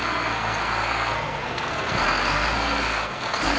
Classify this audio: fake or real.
fake